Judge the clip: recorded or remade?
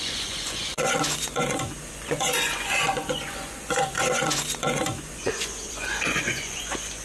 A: remade